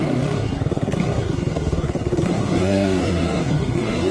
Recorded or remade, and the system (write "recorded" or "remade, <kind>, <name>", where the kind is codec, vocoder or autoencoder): remade, codec, SNAC